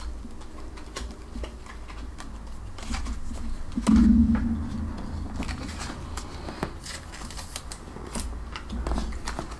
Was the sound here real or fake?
real